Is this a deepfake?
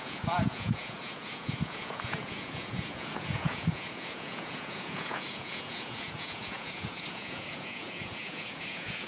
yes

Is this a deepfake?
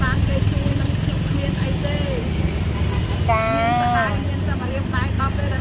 no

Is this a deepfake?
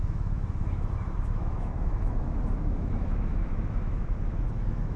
yes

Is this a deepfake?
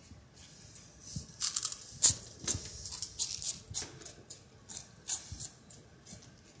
no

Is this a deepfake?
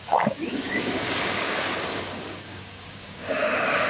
yes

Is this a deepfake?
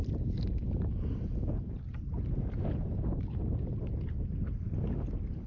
no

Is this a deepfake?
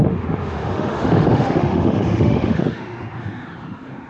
yes